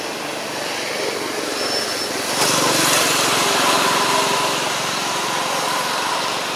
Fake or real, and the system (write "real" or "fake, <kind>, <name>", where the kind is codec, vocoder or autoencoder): real